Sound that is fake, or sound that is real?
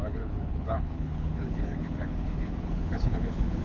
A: fake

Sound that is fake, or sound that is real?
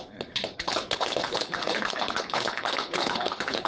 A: fake